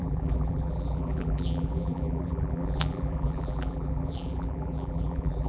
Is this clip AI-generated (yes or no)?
yes